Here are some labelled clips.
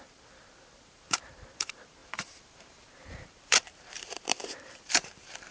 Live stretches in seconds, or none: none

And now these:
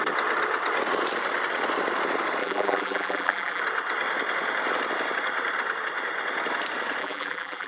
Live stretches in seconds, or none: 0.0-2.4; 3.6-7.0

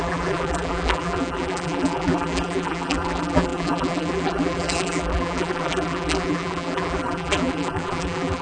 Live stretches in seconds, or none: none

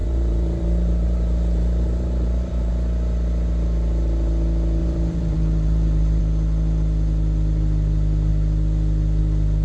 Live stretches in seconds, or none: 2.7-4.8; 6.2-9.6

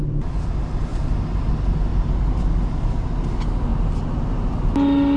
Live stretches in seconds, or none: 0.0-0.9; 1.5-1.9; 2.9-5.2

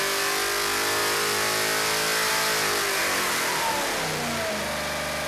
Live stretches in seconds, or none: 0.0-5.3

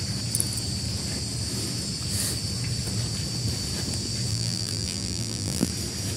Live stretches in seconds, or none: 0.0-4.3; 5.7-6.2

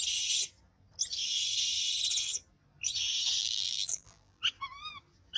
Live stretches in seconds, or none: 0.0-3.4; 4.4-5.4